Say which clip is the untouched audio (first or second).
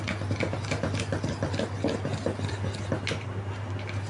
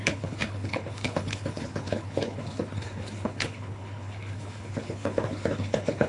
first